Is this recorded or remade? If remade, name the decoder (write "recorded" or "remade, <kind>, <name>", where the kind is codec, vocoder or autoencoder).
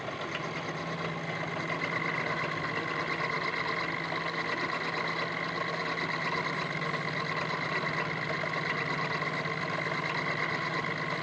recorded